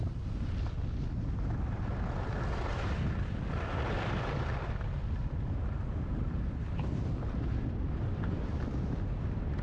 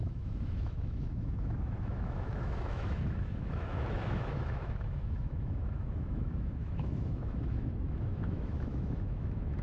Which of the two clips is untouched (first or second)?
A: first